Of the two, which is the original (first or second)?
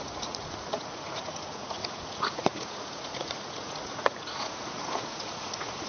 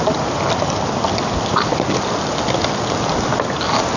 second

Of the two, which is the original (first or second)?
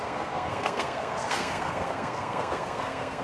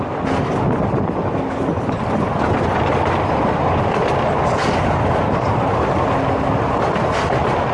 second